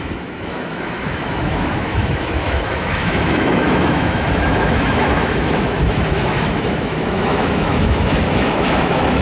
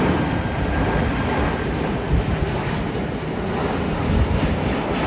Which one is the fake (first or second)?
first